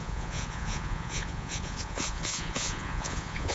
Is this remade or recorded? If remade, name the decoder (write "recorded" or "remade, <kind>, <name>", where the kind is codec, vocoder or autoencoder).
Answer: remade, vocoder, Vocos